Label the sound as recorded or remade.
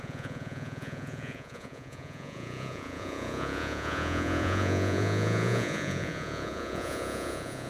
remade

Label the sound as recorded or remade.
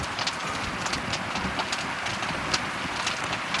recorded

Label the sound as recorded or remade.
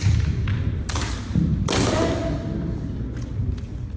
recorded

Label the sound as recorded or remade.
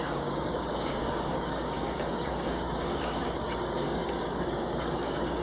remade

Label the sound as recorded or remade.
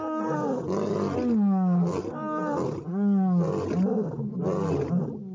recorded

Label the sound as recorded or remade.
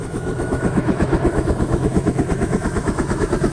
remade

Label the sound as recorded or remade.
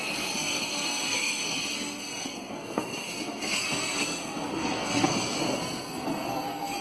remade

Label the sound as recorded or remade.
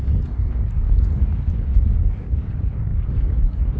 remade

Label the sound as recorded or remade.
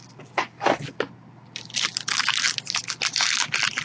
recorded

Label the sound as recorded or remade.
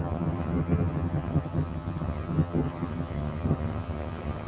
remade